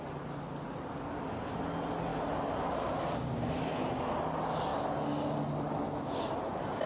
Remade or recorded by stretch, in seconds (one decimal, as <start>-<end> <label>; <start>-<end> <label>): 0.0-6.9 recorded